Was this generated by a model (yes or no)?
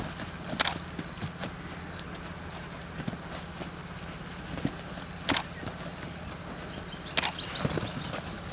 no